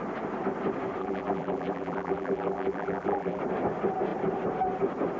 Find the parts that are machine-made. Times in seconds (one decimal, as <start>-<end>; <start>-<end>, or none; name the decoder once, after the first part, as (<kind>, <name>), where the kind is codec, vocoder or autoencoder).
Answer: 1.0-3.4 (vocoder, BigVGAN v2)